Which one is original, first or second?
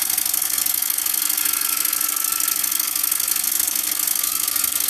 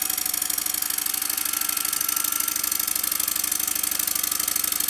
second